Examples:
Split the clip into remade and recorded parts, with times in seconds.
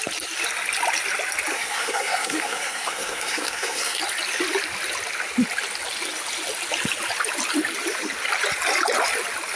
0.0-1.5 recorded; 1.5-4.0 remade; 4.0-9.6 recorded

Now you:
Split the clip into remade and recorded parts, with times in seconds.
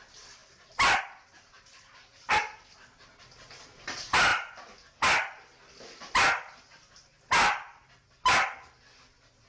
0.0-9.5 recorded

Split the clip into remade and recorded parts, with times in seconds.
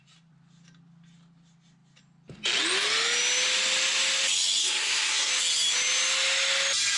0.0-4.6 recorded; 4.6-5.3 remade; 5.3-7.0 recorded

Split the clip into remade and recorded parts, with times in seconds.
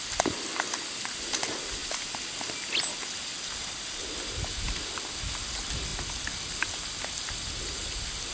0.0-8.3 recorded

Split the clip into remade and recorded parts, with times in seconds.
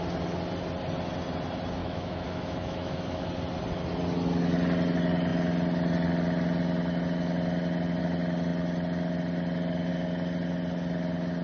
0.0-1.8 recorded; 1.8-3.3 remade; 3.3-11.4 recorded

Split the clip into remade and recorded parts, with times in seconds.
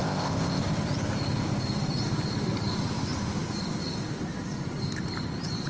0.0-0.6 remade; 0.6-5.7 recorded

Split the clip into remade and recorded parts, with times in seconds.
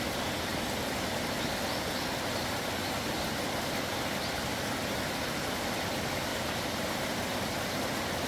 0.0-6.3 recorded; 6.3-7.1 remade; 7.1-8.3 recorded